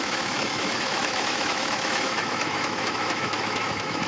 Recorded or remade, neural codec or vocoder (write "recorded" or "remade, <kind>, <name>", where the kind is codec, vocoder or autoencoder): remade, autoencoder, DAC-VAE